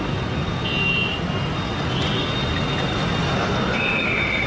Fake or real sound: real